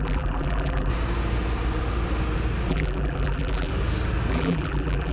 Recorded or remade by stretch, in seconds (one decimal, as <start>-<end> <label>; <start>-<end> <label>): 0.0-0.9 remade; 0.9-2.7 recorded; 2.7-3.7 remade; 3.7-4.3 recorded; 4.3-5.1 remade